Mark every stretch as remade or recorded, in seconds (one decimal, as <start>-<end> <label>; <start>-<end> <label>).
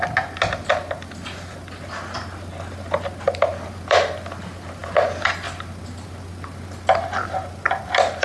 0.0-8.2 recorded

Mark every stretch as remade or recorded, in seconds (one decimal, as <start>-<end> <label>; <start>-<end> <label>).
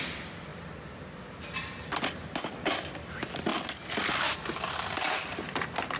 0.0-3.5 recorded; 3.5-4.8 remade; 4.8-6.0 recorded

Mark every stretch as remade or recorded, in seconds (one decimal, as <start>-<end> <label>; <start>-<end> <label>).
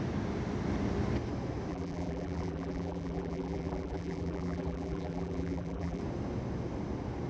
0.0-1.7 recorded; 1.7-6.0 remade; 6.0-7.3 recorded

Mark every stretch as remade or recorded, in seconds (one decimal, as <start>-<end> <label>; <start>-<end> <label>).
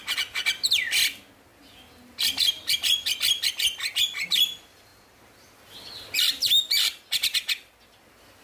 0.0-8.4 recorded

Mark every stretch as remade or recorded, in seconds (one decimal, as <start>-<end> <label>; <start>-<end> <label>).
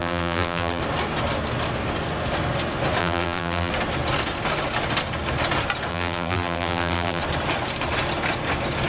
0.0-0.8 remade; 0.8-3.0 recorded; 3.0-3.7 remade; 3.7-5.9 recorded; 5.9-7.2 remade; 7.2-8.9 recorded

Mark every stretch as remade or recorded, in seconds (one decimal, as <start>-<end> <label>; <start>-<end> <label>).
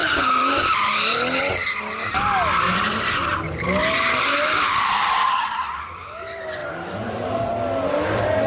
0.0-1.4 remade; 1.4-3.8 recorded; 3.8-5.9 remade; 5.9-6.6 recorded; 6.6-7.5 remade; 7.5-8.5 recorded